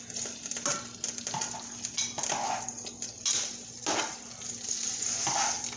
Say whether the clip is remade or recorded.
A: recorded